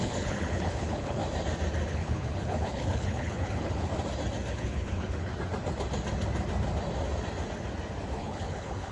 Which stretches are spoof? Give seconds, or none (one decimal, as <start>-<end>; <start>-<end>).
0.0-1.2; 1.9-3.9; 4.5-5.3; 8.1-8.9

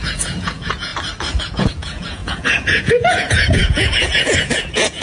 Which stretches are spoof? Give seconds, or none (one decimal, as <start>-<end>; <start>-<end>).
0.0-0.9; 1.4-5.0

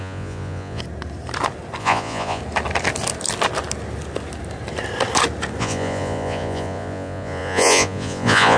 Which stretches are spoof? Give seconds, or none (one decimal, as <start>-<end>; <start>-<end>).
0.0-0.8; 1.8-2.4; 5.6-8.6

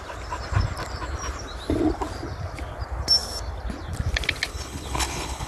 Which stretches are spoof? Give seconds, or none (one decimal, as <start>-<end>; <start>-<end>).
4.5-5.5

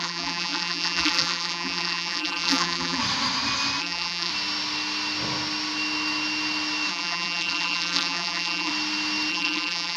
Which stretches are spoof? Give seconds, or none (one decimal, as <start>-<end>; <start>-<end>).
0.0-3.0; 3.8-4.3; 6.9-8.7; 9.3-10.0